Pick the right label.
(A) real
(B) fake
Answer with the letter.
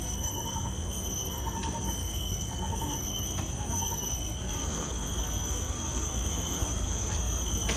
B